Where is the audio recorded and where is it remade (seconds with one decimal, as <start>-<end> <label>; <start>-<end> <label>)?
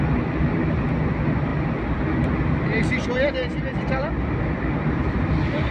0.0-5.7 recorded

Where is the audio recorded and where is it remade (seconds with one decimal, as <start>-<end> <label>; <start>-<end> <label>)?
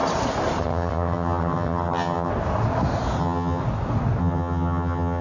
0.0-0.6 recorded; 0.6-2.3 remade; 2.3-3.2 recorded; 3.2-3.6 remade; 3.6-4.2 recorded; 4.2-5.2 remade